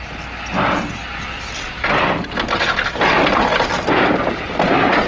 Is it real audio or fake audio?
real